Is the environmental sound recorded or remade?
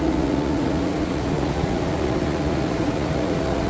remade